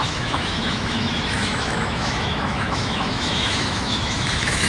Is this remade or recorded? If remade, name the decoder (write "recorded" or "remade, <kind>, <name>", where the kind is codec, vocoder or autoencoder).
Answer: remade, autoencoder, DAC-VAE